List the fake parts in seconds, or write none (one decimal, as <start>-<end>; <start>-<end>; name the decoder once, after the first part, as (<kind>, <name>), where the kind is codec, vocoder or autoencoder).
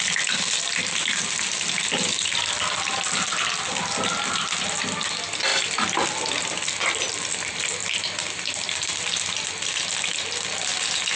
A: 7.8-9.7 (vocoder, BigVGAN v2)